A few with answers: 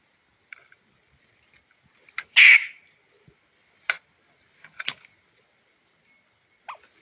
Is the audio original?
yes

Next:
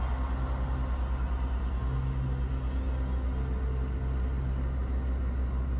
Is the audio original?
yes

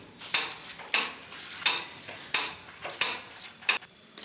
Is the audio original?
yes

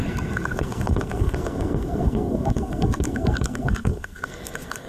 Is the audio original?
no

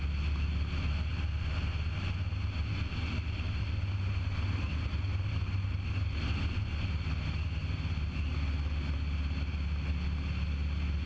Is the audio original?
yes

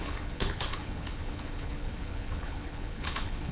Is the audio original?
no